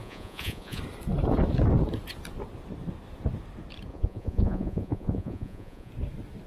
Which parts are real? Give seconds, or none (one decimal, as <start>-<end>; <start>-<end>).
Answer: 0.8-3.9; 5.9-6.5

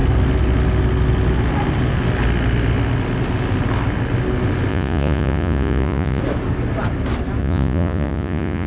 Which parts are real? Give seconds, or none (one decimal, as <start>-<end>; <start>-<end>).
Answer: 0.0-4.7; 6.2-7.4

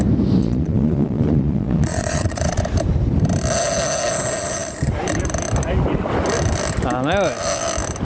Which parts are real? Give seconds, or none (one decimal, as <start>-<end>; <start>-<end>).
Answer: 0.0-0.4; 2.6-8.0

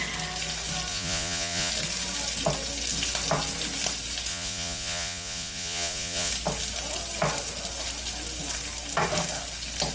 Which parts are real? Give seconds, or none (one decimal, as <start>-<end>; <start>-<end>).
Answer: 0.0-0.9; 1.7-4.3; 6.3-9.9

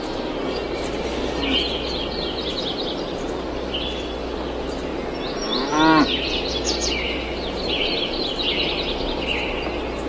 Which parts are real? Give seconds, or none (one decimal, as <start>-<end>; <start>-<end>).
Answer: 0.0-10.1